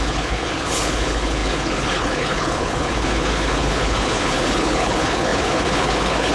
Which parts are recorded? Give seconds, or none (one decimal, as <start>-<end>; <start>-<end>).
none